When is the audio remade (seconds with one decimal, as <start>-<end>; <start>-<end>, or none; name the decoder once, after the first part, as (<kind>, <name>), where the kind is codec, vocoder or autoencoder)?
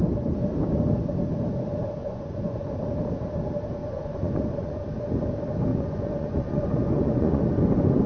2.0-2.7 (vocoder, Vocos); 3.8-4.8; 5.7-7.4